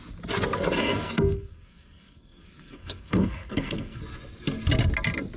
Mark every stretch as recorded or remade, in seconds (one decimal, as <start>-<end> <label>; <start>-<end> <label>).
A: 0.0-0.8 recorded; 0.8-4.0 remade; 4.0-5.4 recorded